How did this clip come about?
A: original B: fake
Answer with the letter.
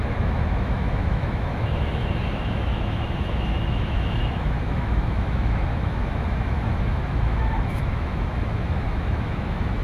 B